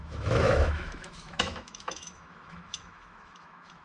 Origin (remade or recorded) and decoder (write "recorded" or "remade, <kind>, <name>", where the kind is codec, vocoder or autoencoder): remade, autoencoder, DAC-VAE